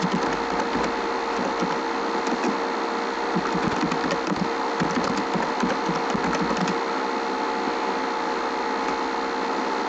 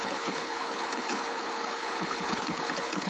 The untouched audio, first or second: first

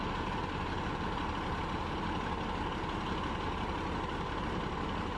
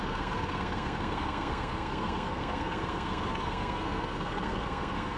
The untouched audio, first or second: first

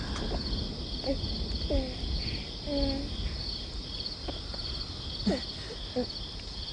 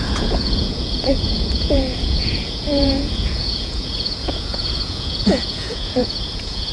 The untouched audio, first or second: first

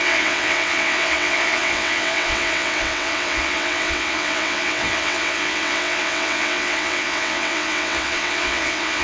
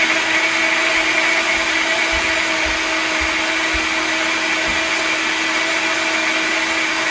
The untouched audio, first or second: second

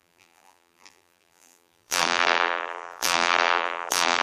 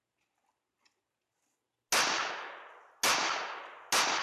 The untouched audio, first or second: second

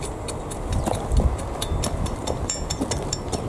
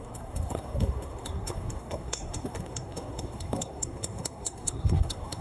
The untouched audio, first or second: first